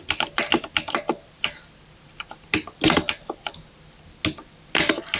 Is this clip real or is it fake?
real